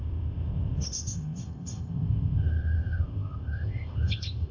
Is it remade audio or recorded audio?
remade